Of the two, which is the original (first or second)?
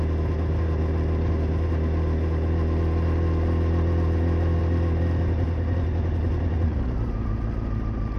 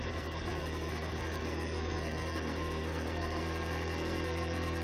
first